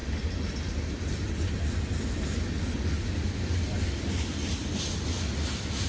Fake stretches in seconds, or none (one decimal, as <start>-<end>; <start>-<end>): none